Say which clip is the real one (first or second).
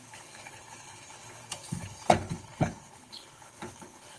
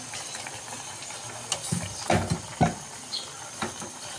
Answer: second